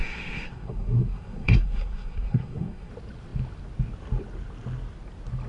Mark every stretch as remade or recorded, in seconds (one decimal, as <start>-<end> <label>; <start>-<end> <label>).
0.0-2.9 remade; 2.9-5.5 recorded